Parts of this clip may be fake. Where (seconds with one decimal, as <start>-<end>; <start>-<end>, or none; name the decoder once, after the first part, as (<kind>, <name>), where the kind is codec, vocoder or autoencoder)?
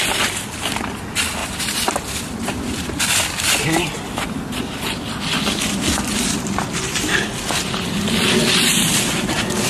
1.4-6.4 (vocoder, BigVGAN v2)